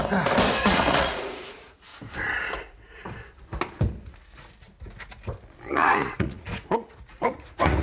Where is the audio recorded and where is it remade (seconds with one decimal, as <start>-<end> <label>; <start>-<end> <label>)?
0.0-0.6 recorded; 0.6-1.9 remade; 1.9-5.7 recorded; 5.7-7.8 remade